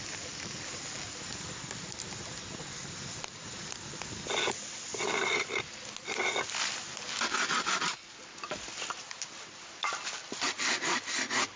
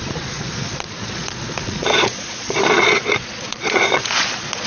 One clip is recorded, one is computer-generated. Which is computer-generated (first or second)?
second